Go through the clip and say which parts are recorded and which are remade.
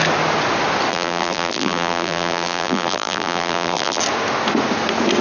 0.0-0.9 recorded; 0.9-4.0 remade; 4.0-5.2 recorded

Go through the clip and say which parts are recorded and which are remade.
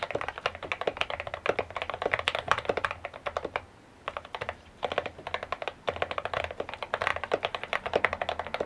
0.0-8.7 recorded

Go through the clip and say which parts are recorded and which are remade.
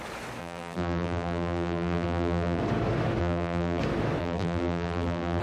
0.0-0.4 recorded; 0.4-2.6 remade; 2.6-3.2 recorded; 3.2-3.8 remade; 3.8-4.2 recorded; 4.2-5.4 remade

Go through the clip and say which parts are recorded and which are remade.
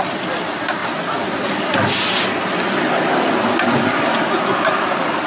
0.0-5.3 recorded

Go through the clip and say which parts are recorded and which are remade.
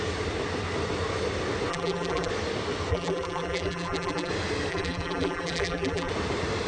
0.0-1.7 recorded; 1.7-2.3 remade; 2.3-2.9 recorded; 2.9-4.3 remade; 4.3-4.7 recorded; 4.7-6.1 remade; 6.1-6.7 recorded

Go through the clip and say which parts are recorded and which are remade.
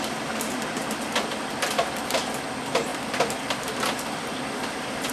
0.0-2.9 recorded; 2.9-5.1 remade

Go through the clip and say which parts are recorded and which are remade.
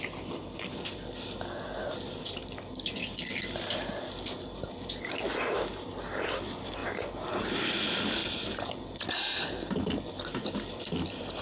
0.0-2.4 recorded; 2.4-4.7 remade; 4.7-11.4 recorded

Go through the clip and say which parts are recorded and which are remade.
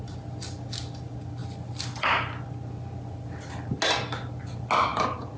0.0-4.9 recorded; 4.9-5.4 remade